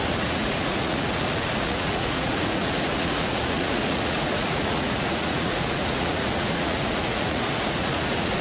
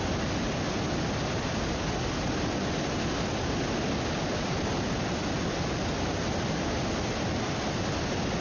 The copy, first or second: first